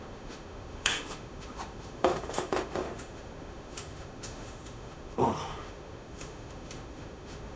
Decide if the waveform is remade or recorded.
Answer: remade